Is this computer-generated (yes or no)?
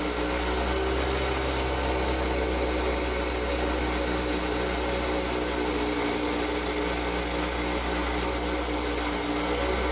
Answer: no